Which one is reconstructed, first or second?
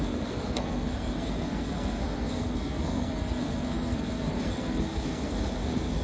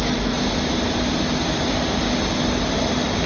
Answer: first